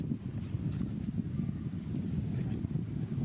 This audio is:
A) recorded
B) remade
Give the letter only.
A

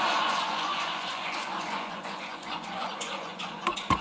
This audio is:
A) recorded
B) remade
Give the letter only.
B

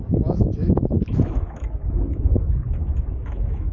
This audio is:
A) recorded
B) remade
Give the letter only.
B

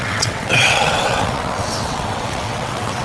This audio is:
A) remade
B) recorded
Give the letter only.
A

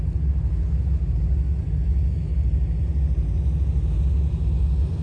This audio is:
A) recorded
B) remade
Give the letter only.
A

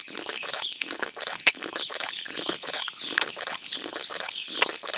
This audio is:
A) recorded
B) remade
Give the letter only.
B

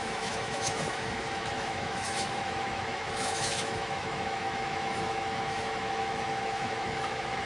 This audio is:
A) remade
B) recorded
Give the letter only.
A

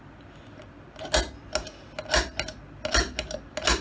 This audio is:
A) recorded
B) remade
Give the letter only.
A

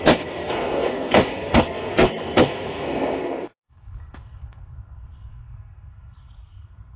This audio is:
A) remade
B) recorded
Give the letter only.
A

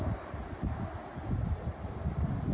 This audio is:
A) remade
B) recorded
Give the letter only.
B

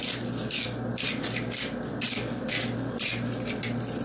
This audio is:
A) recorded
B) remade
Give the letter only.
A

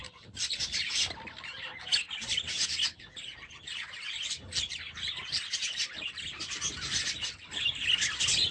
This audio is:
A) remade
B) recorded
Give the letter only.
B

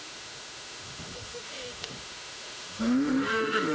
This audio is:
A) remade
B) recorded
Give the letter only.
A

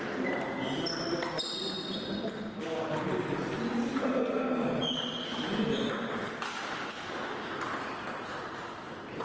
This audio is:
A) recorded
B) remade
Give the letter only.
A